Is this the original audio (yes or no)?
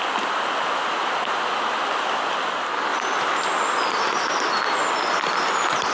yes